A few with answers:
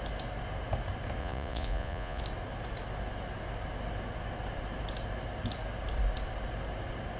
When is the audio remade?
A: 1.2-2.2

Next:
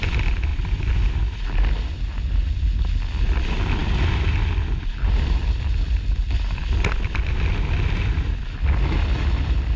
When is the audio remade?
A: none

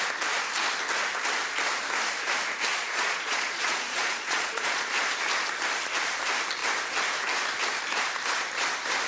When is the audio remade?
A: 2.7-4.9